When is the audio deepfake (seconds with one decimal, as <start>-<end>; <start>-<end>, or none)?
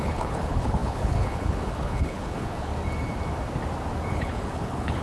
0.0-2.7; 4.1-5.0